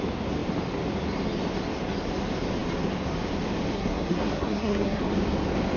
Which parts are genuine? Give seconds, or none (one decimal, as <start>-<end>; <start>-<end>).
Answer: 0.0-3.7; 5.0-5.8